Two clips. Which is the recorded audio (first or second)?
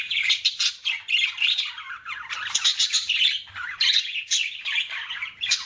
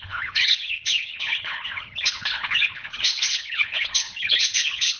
first